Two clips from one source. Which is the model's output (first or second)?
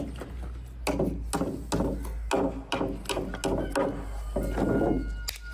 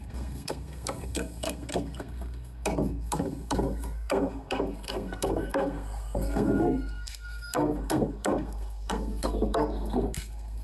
second